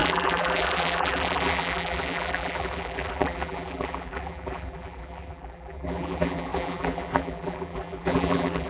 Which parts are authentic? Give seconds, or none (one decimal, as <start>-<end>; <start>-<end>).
none